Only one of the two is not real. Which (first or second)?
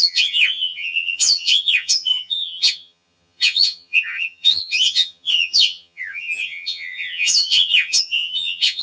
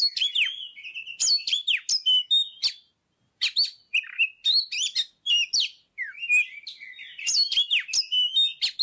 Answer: first